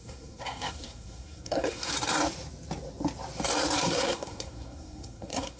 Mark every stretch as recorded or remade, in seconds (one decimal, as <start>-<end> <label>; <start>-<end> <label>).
0.0-1.9 remade; 1.9-3.8 recorded; 3.8-5.6 remade